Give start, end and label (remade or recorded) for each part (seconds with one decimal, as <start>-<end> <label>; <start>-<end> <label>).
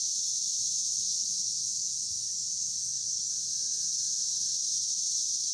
0.0-0.9 recorded; 0.9-3.3 remade; 3.3-5.5 recorded